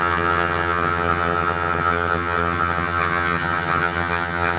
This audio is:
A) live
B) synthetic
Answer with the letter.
B